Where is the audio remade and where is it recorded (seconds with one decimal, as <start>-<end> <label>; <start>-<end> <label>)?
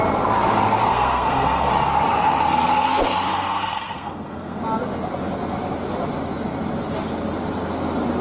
0.0-0.9 recorded; 0.9-1.7 remade; 1.7-3.3 recorded; 3.3-4.6 remade; 4.6-8.2 recorded